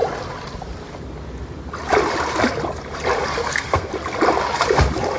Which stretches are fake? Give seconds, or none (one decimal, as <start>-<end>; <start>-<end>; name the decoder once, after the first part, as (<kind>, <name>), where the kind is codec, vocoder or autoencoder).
3.4-3.9 (codec, SNAC)